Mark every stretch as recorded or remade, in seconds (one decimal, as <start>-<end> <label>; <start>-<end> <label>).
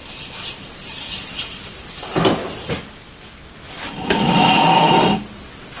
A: 0.0-5.8 recorded